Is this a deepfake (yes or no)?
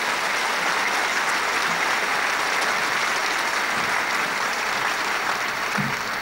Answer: no